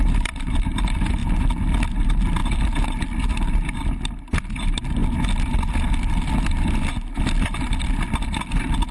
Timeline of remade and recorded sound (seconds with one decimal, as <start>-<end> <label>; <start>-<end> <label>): 0.0-1.2 remade; 1.2-1.9 recorded; 1.9-2.4 remade; 2.4-4.6 recorded; 4.6-5.0 remade; 5.0-8.9 recorded